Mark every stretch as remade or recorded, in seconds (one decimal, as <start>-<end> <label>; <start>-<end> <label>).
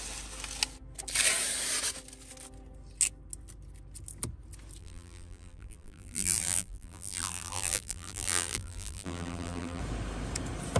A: 0.0-4.8 recorded; 4.8-9.8 remade; 9.8-10.8 recorded